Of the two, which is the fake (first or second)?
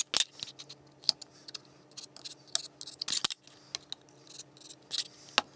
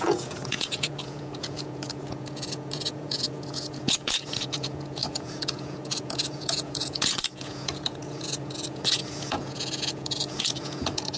second